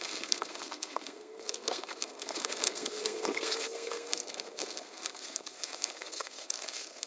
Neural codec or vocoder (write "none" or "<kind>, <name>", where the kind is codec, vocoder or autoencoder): codec, SNAC